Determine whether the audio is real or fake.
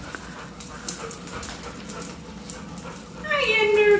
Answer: real